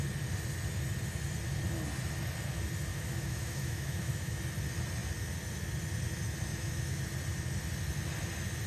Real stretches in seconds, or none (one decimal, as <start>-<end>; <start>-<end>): 0.0-2.9; 4.4-6.5; 7.0-8.7